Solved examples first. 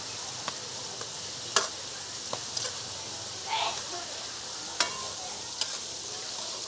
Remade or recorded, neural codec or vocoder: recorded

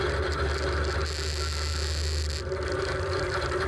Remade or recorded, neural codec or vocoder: recorded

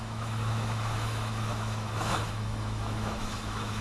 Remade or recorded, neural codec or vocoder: remade, autoencoder, DAC-VAE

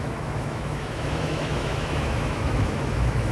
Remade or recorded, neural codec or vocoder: remade, autoencoder, DAC-VAE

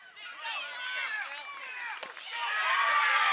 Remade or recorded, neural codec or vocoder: recorded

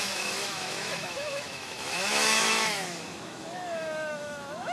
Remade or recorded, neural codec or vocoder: remade, autoencoder, DAC-VAE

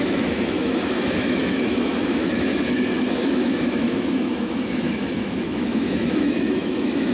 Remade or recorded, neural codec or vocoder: remade, autoencoder, DAC-VAE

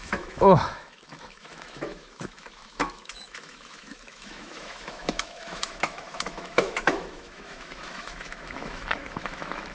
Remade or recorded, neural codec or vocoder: remade, autoencoder, DAC-VAE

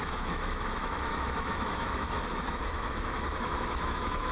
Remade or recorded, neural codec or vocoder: remade, autoencoder, DAC-VAE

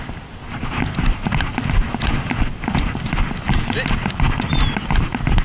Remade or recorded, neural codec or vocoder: recorded